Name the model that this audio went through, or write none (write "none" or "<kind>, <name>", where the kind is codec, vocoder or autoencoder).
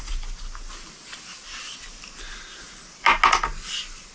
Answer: none